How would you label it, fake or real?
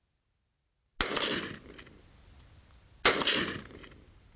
real